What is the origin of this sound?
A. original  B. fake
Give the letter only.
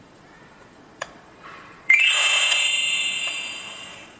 B